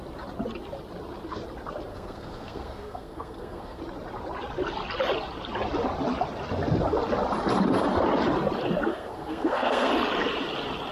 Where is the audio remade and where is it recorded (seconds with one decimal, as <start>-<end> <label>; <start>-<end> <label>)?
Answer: 0.0-1.9 recorded; 1.9-3.8 remade; 3.8-8.9 recorded; 8.9-9.9 remade; 9.9-10.9 recorded